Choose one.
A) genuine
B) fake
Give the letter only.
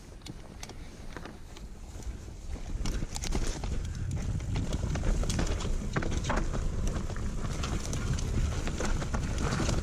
A